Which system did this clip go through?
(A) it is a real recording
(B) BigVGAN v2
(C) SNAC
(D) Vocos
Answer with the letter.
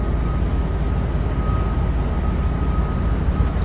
A